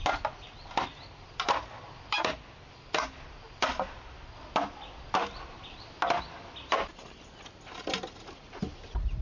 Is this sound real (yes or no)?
yes